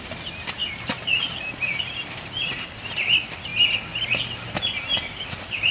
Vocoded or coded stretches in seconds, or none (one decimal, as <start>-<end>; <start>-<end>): 0.0-3.5; 5.3-5.7